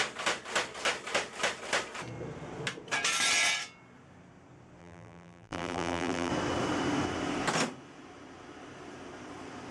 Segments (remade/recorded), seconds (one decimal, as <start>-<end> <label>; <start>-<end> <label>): 0.0-4.8 recorded; 4.8-6.3 remade; 6.3-9.7 recorded